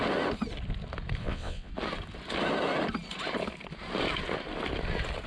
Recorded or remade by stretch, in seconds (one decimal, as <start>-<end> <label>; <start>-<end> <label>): 0.0-1.2 recorded; 1.2-1.7 remade; 1.7-5.3 recorded